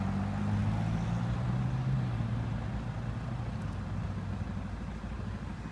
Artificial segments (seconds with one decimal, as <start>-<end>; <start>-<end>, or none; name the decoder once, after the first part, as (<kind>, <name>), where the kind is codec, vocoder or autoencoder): none